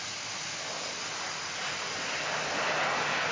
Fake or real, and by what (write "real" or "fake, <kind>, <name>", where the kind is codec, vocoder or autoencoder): real